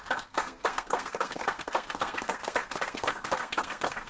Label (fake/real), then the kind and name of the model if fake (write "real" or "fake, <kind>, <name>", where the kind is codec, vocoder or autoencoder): fake, codec, SNAC